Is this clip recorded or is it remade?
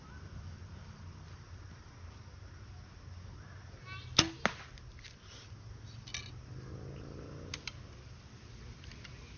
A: recorded